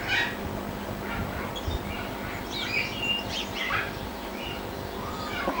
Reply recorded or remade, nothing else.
recorded